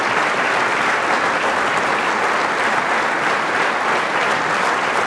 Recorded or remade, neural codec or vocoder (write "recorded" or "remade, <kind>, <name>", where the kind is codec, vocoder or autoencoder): recorded